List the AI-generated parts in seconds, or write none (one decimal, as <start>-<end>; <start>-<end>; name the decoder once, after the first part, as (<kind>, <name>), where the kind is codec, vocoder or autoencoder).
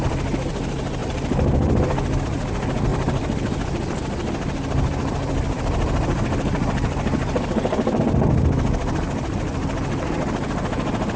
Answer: 1.0-2.2 (vocoder, BigVGAN v2); 2.9-8.0